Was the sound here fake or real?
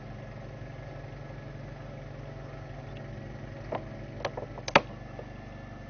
real